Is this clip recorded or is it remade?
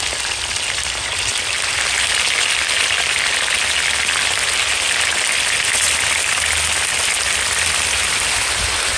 recorded